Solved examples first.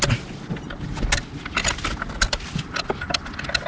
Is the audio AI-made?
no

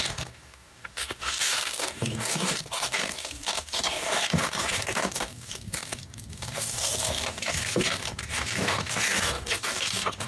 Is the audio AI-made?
yes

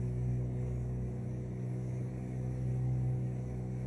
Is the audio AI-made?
yes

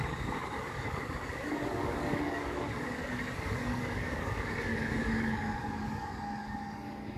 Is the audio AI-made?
yes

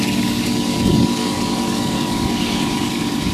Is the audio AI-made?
yes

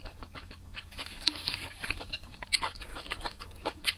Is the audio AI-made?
yes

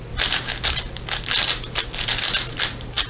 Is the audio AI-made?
no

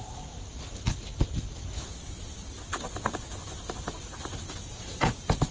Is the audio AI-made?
no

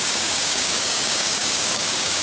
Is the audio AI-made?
yes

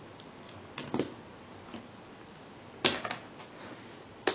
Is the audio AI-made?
no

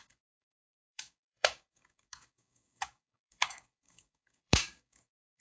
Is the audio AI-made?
yes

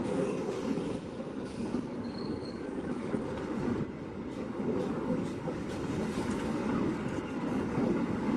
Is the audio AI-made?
yes